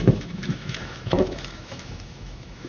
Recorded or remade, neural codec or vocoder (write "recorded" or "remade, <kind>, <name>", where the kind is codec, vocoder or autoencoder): remade, autoencoder, DAC-VAE